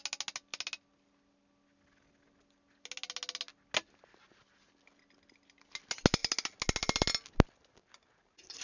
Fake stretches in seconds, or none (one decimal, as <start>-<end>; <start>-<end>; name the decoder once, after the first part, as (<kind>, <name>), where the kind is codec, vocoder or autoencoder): none